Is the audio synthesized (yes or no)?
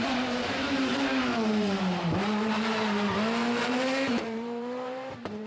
yes